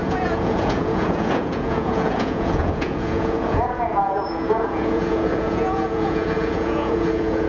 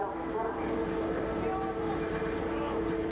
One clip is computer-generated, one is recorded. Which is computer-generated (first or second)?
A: first